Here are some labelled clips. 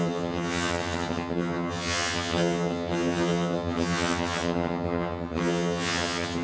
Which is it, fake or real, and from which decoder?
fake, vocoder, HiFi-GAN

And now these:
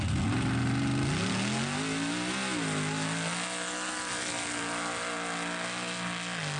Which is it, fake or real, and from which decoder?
real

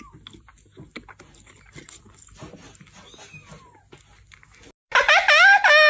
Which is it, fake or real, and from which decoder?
real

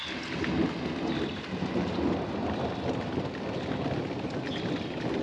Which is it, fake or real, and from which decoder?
real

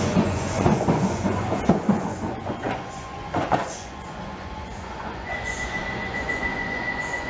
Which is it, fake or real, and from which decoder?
fake, vocoder, Vocos